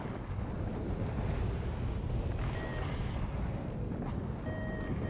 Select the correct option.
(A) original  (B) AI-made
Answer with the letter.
A